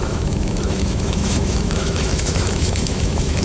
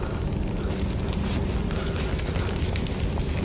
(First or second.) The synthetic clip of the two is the first